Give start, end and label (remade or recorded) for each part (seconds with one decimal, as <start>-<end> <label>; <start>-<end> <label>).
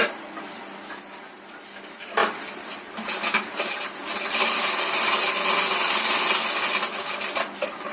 0.0-7.9 recorded